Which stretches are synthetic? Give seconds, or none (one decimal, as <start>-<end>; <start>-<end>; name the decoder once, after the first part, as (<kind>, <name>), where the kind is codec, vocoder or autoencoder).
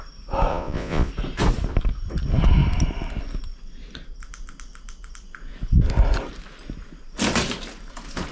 0.5-1.1 (vocoder, Vocos)